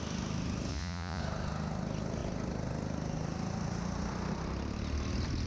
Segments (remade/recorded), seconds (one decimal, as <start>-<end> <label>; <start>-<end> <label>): 0.0-0.7 recorded; 0.7-1.2 remade; 1.2-5.5 recorded